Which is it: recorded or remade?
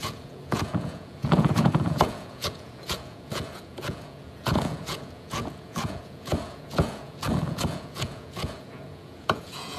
remade